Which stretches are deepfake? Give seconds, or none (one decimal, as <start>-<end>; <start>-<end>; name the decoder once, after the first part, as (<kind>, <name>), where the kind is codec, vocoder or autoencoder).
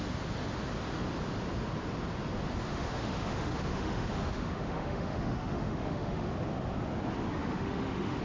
2.7-6.3 (autoencoder, DAC-VAE); 7.4-8.2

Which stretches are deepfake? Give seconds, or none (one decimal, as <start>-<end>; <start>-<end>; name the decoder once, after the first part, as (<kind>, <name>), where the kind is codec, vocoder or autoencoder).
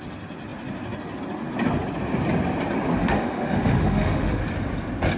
3.0-4.4 (autoencoder, DAC-VAE)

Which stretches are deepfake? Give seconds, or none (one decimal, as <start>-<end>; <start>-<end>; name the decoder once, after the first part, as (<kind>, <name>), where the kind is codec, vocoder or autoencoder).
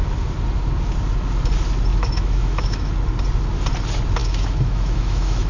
1.9-2.9 (autoencoder, DAC-VAE); 4.2-5.5